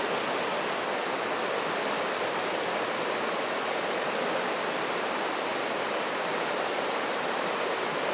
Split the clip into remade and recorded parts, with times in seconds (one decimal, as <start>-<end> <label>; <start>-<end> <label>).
0.0-5.5 recorded; 5.5-7.6 remade; 7.6-8.1 recorded